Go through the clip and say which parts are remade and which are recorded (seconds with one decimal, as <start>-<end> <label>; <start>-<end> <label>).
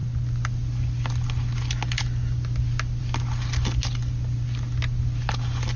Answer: 0.0-5.8 recorded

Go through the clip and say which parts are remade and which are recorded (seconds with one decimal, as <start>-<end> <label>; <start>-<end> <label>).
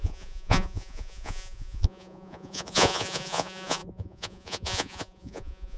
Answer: 0.0-5.8 remade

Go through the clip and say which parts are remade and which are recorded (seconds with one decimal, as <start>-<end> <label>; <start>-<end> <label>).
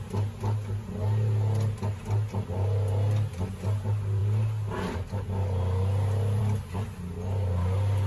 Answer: 0.0-8.1 recorded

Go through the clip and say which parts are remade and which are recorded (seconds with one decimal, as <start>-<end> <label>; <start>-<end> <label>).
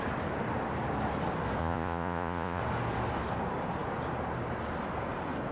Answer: 0.0-1.6 recorded; 1.6-2.6 remade; 2.6-5.5 recorded